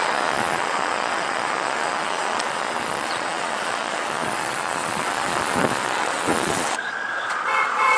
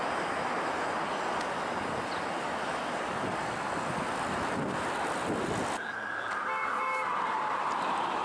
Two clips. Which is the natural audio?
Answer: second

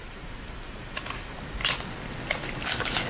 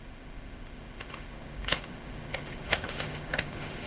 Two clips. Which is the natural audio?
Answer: first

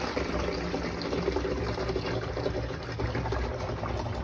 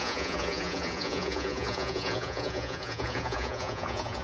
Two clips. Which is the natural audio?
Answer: first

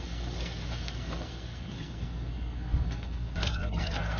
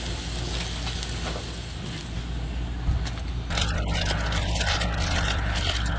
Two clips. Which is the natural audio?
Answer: second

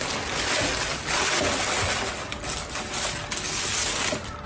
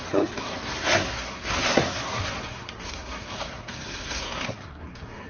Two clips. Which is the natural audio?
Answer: first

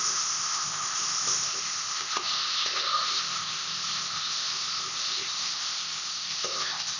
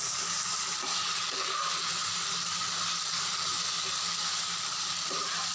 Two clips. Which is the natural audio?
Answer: second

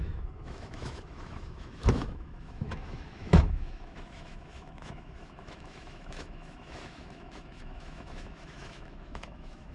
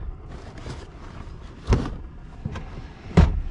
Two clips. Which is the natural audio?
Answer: second